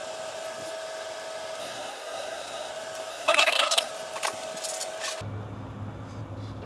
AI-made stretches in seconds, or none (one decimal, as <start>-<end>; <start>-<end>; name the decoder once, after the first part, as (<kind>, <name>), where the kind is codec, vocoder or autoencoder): 1.6-2.7 (codec, SNAC); 3.1-3.9